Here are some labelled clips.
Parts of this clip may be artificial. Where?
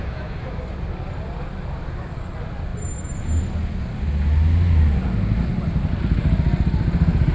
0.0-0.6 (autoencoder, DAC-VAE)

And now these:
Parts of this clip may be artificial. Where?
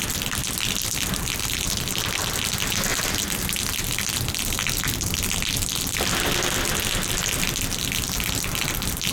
none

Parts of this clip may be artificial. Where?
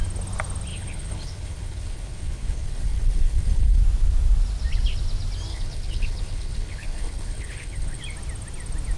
0.7-3.8 (codec, HILCodec); 5.5-8.0